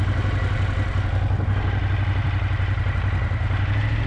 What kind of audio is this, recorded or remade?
recorded